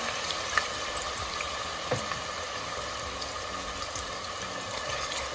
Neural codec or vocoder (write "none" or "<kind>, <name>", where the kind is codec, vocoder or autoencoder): none